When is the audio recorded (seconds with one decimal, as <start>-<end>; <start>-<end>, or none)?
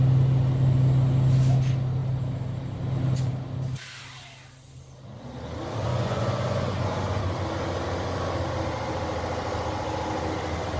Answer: 0.0-5.9; 7.2-10.8